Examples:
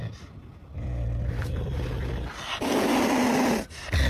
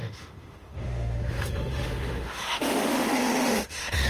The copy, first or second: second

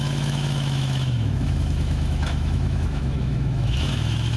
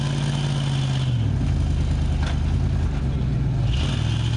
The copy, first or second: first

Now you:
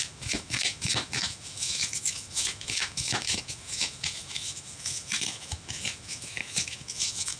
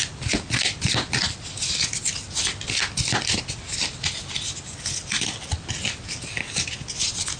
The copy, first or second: first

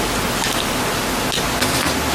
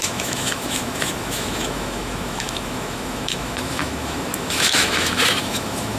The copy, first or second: second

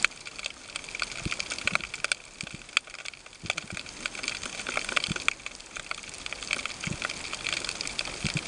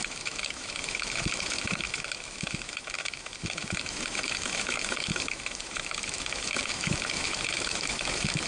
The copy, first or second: second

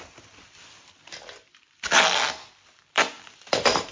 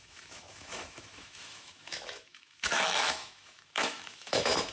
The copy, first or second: second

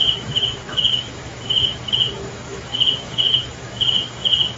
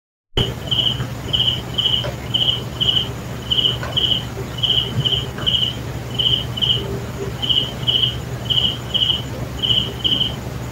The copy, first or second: first